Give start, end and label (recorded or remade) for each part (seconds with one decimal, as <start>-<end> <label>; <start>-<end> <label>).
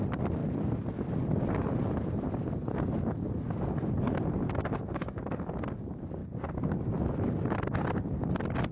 0.0-8.7 recorded